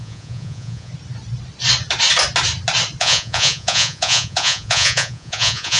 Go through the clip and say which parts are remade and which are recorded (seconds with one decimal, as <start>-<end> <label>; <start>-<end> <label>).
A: 0.0-0.9 remade; 0.9-3.0 recorded; 3.0-5.8 remade